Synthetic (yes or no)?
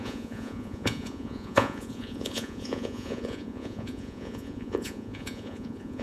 yes